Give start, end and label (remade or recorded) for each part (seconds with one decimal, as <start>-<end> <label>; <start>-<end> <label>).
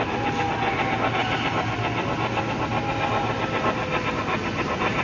0.0-5.0 recorded